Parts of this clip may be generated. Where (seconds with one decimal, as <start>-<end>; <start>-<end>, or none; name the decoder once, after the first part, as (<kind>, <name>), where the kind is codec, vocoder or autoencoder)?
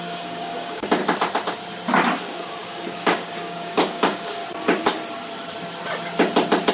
0.0-1.0 (codec, DAC); 2.2-4.4